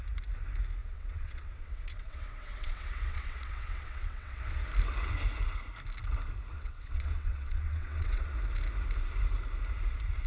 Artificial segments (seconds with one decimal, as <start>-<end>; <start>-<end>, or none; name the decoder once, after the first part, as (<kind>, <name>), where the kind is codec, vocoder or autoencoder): 0.8-4.4 (vocoder, WaveNeXt); 6.5-8.3